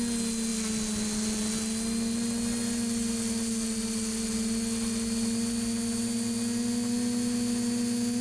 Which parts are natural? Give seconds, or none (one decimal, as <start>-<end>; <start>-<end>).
0.0-8.2